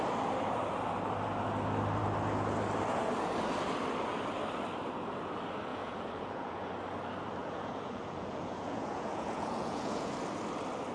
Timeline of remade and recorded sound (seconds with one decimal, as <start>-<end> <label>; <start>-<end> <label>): 0.0-5.7 recorded; 5.7-6.7 remade; 6.7-7.4 recorded; 7.4-10.1 remade; 10.1-10.9 recorded